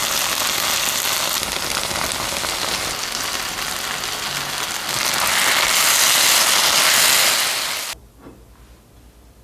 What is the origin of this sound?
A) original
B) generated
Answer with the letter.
A